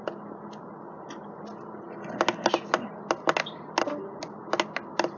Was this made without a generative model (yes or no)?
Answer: yes